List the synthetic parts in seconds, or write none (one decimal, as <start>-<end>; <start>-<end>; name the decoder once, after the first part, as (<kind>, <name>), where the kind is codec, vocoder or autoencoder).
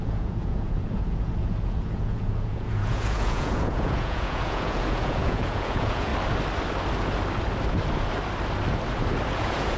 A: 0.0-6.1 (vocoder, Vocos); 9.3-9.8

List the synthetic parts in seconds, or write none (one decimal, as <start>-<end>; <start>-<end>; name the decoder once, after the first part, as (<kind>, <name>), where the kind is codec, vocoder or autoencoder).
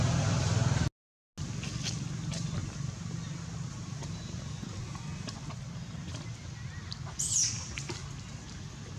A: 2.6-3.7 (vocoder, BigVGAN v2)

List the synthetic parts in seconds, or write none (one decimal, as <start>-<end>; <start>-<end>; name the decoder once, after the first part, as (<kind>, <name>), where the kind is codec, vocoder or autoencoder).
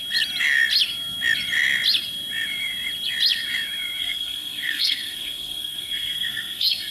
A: 4.0-6.9 (codec, SNAC)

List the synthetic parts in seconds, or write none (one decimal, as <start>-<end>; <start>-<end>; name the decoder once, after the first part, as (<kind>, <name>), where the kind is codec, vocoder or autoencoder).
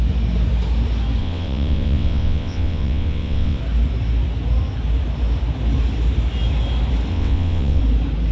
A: 1.2-3.6 (vocoder, WaveNeXt); 7.1-7.8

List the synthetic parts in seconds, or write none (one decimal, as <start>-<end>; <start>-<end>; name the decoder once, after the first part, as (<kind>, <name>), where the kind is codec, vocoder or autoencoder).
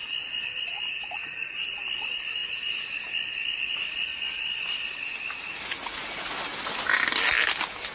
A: 0.9-1.6 (vocoder, Vocos); 5.4-6.3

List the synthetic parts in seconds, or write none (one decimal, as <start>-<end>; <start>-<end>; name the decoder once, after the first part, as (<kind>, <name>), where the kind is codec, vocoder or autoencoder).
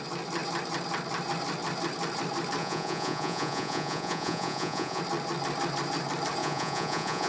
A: 2.6-5.0 (vocoder, Vocos); 6.4-7.3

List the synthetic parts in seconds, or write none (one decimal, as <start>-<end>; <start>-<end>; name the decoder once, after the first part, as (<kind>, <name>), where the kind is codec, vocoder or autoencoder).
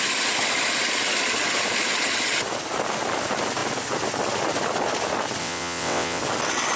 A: 5.4-6.2 (vocoder, WaveNeXt)